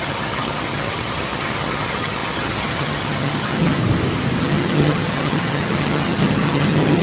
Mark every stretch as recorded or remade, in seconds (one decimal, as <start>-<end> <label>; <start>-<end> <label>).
0.0-3.8 remade; 3.8-4.4 recorded; 4.4-7.0 remade